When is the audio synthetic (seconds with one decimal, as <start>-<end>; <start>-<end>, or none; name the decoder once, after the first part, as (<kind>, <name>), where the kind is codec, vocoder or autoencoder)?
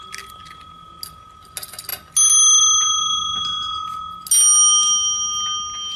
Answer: none